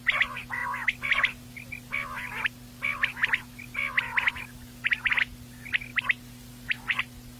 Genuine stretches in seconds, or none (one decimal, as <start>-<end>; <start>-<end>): 0.0-7.4